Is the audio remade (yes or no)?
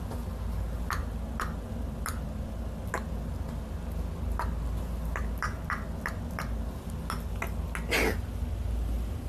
no